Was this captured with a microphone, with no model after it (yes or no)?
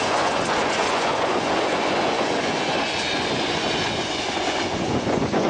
no